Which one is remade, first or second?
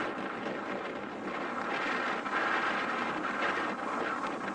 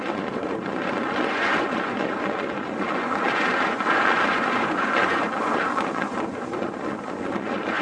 second